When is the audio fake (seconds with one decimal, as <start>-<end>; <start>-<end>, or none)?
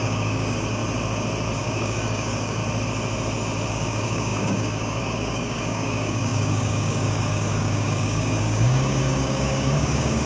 0.0-0.8; 1.6-2.6; 3.7-10.3